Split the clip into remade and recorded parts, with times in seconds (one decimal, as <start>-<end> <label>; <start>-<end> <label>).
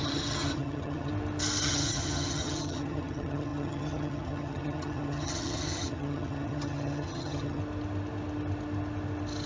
0.0-1.1 remade; 1.1-1.6 recorded; 1.6-7.6 remade; 7.6-9.5 recorded